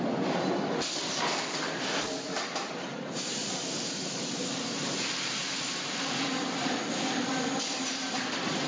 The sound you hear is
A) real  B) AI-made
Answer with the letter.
B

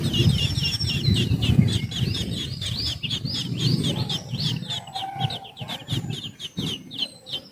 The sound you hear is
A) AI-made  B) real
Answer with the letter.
A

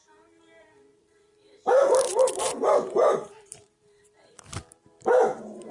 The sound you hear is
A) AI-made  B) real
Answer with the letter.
A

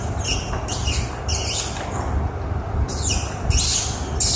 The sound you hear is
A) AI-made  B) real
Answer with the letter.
B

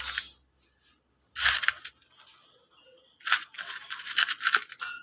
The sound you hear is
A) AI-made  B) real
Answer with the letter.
B